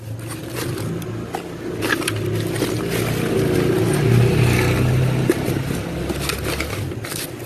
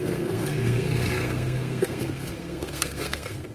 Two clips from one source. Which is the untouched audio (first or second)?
first